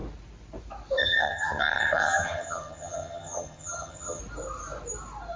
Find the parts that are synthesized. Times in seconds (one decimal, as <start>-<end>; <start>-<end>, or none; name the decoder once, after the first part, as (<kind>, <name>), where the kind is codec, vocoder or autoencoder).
1.0-4.2 (vocoder, HiFi-GAN)